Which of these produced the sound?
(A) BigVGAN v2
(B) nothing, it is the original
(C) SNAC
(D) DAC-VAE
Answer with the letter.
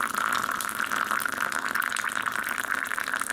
B